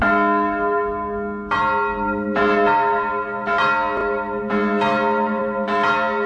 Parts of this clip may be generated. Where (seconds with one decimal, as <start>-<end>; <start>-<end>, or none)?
none